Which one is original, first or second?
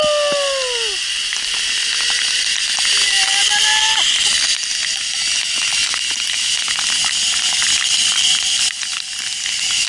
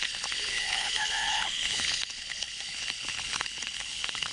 first